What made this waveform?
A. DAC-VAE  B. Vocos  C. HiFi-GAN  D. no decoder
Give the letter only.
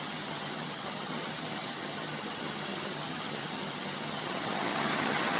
C